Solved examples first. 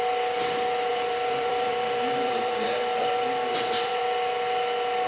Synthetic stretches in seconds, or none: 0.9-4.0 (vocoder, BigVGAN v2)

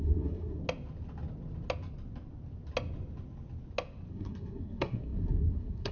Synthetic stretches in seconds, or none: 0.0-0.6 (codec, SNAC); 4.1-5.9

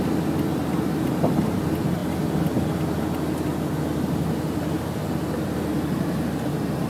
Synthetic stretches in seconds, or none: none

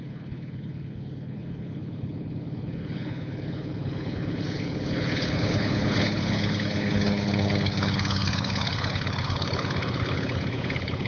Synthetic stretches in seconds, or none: 0.0-11.1 (codec, HILCodec)

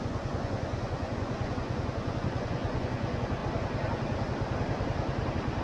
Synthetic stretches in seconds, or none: 0.0-3.4 (vocoder, Vocos)

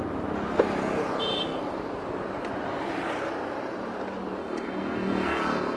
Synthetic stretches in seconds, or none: 4.4-5.8 (codec, SNAC)

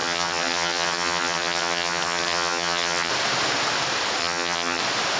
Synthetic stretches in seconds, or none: 0.0-3.1 (vocoder, HiFi-GAN); 4.2-4.8

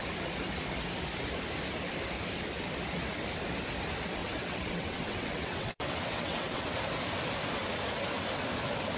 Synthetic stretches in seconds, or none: 4.2-6.8 (vocoder, WaveNeXt)